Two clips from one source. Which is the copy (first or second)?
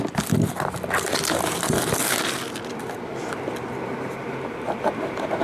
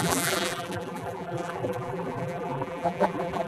second